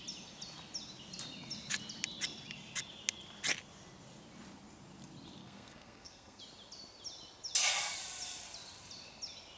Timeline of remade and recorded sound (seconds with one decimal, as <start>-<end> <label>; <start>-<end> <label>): 0.0-5.4 recorded; 5.4-6.4 remade; 6.4-9.6 recorded